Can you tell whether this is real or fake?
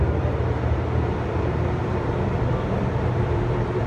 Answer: fake